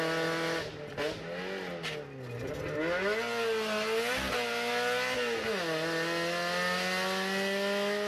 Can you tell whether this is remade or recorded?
recorded